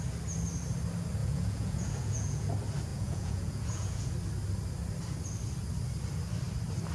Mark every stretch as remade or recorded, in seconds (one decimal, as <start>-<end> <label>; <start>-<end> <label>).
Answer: 0.0-1.2 recorded; 1.2-2.5 remade; 2.5-2.9 recorded; 2.9-4.1 remade; 4.1-6.9 recorded